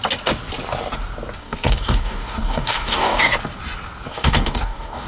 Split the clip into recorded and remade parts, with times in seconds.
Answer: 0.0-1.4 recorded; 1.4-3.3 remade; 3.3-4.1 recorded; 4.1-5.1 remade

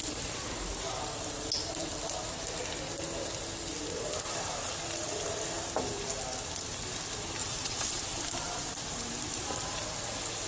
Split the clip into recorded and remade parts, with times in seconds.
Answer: 0.0-7.4 recorded; 7.4-8.0 remade; 8.0-10.5 recorded

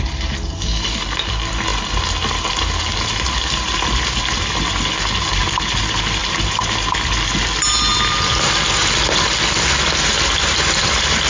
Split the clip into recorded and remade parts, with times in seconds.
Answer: 0.0-11.3 recorded